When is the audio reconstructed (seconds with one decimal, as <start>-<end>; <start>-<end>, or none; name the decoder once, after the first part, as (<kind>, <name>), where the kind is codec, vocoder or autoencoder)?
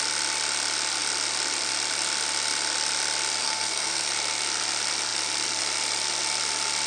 3.4-4.1 (codec, SNAC)